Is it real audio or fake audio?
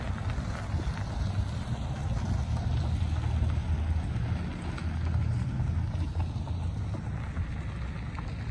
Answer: real